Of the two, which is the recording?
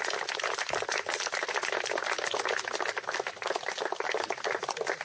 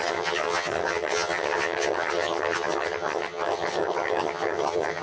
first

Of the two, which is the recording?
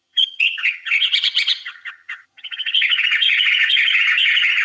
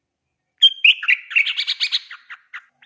second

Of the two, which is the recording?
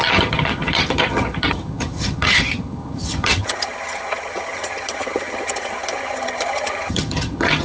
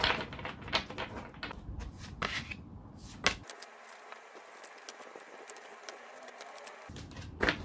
second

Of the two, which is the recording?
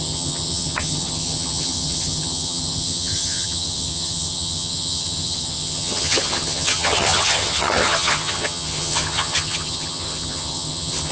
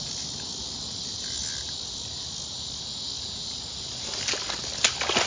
second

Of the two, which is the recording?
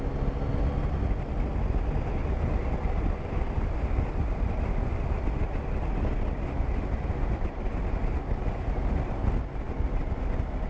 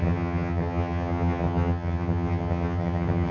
first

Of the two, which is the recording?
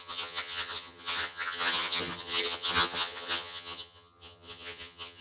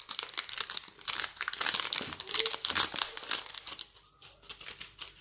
second